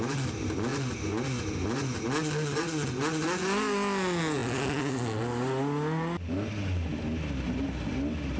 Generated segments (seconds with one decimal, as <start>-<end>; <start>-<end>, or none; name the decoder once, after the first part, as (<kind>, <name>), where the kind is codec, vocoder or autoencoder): none